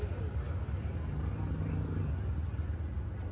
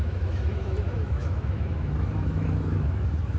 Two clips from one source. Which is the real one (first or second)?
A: first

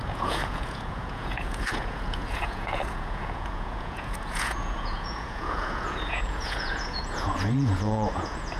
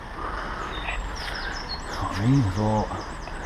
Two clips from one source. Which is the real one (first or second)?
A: second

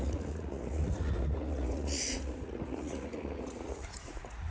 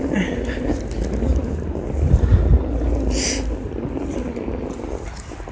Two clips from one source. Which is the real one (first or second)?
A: second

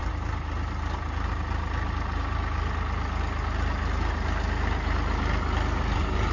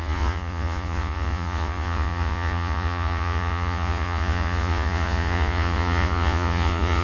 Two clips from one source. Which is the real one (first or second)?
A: first